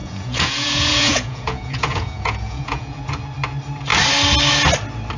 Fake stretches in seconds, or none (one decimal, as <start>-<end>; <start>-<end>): 0.0-3.1